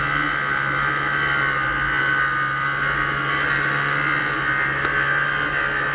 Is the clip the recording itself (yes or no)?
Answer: yes